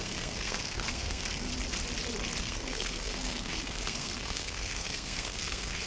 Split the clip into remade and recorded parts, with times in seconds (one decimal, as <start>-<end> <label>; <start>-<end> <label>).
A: 0.0-1.5 remade; 1.5-2.4 recorded; 2.4-5.9 remade